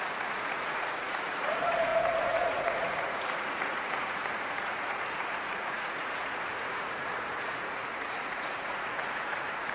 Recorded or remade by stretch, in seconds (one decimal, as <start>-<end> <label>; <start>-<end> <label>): 0.0-9.7 remade